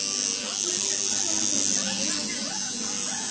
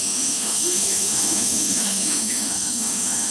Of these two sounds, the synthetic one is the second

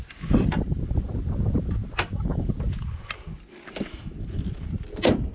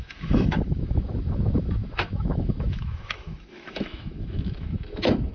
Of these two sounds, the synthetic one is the second